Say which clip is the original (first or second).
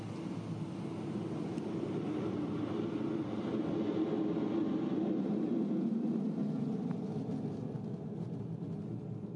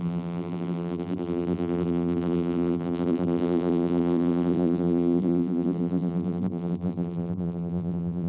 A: first